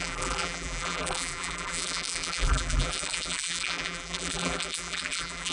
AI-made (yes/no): yes